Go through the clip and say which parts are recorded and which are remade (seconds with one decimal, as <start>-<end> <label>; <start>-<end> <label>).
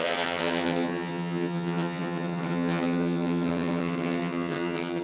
0.0-5.0 remade